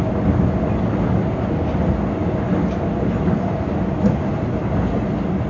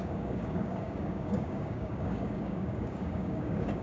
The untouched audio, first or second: first